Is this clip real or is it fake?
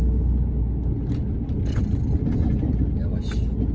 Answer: real